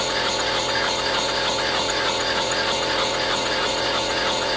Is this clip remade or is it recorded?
remade